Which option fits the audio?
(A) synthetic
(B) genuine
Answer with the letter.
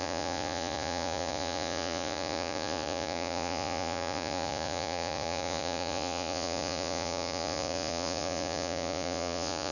A